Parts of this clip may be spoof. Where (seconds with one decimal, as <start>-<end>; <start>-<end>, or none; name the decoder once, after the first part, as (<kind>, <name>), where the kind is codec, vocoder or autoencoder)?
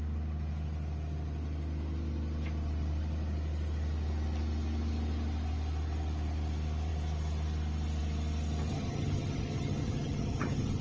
8.7-10.8 (vocoder, HiFi-GAN)